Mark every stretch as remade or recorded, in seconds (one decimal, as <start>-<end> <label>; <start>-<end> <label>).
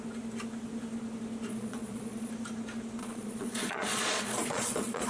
0.0-1.5 recorded; 1.5-2.3 remade; 2.3-3.0 recorded; 3.0-5.1 remade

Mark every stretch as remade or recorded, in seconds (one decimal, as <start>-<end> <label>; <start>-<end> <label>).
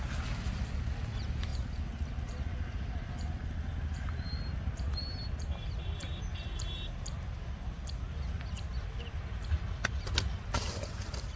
0.0-11.4 recorded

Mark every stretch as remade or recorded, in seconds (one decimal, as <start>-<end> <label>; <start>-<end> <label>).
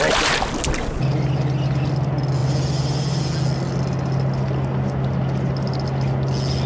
0.0-6.7 recorded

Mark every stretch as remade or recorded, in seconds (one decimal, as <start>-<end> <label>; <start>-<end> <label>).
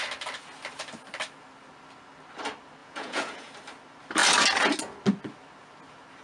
0.0-2.8 recorded; 2.8-3.5 remade; 3.5-6.2 recorded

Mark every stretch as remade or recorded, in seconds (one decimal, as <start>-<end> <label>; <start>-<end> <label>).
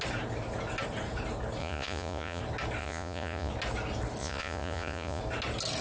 0.0-1.6 recorded; 1.6-2.4 remade; 2.4-2.8 recorded; 2.8-3.5 remade; 3.5-4.2 recorded; 4.2-5.2 remade; 5.2-5.8 recorded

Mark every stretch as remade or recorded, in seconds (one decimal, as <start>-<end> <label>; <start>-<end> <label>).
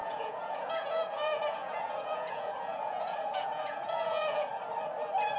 0.0-4.5 remade; 4.5-5.4 recorded